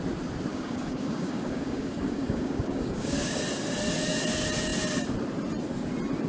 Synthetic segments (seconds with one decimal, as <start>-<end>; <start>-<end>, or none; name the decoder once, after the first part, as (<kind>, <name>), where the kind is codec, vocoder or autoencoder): 0.5-3.4 (codec, DAC)